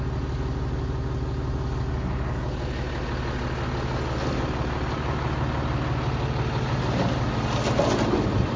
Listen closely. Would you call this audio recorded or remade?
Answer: recorded